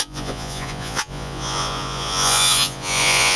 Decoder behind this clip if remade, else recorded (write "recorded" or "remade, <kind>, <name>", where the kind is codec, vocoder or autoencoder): remade, vocoder, Vocos